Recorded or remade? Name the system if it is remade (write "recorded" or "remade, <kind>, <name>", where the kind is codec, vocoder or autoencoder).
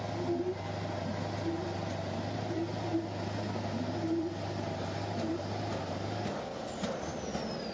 recorded